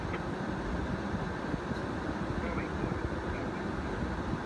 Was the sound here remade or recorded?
recorded